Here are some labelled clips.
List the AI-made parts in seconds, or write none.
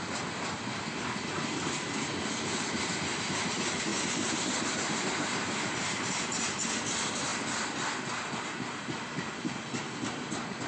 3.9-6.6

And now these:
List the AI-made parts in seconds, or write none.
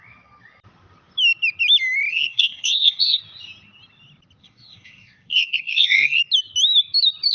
2.1-3.2; 4.4-6.2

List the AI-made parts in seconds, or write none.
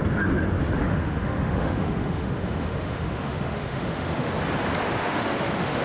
0.8-4.3; 5.0-5.8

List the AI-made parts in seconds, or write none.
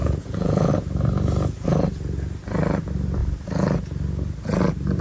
0.0-0.7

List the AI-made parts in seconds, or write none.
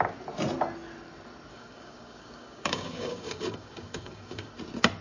1.5-4.5